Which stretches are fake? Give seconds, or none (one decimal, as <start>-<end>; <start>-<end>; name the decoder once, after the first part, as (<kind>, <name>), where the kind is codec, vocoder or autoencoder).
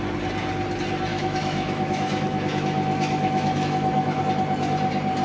1.1-4.2 (autoencoder, DAC-VAE)